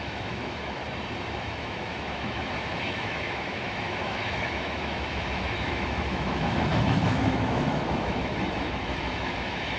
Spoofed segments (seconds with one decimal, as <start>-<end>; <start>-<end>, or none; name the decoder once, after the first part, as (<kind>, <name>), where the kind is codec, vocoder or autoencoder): 0.0-0.8 (autoencoder, DAC-VAE); 1.3-9.8